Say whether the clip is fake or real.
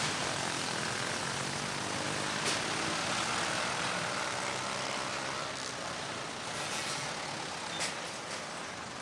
real